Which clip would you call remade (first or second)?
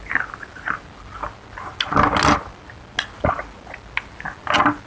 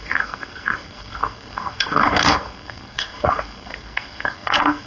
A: second